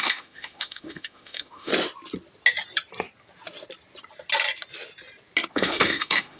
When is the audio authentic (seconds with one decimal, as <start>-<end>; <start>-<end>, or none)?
1.7-5.5